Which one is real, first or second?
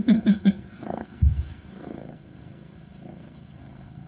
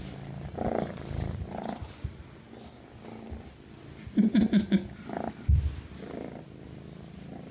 second